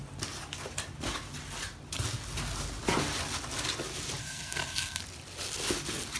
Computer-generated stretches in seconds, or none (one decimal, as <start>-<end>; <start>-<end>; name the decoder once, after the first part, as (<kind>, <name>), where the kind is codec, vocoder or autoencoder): 4.2-5.0 (codec, SNAC)